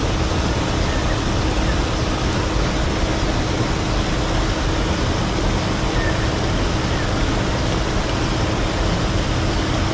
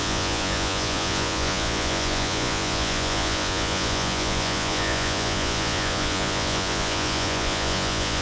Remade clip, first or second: second